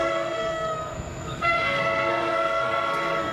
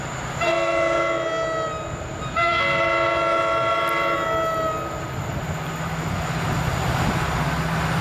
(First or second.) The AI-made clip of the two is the first